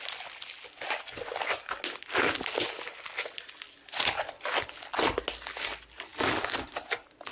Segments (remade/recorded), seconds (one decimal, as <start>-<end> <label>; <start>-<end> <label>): 0.0-7.3 recorded